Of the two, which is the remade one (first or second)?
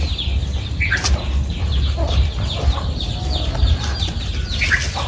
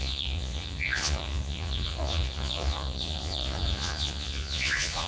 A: second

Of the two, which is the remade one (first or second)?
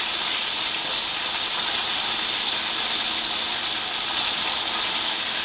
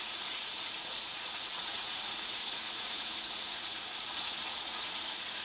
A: second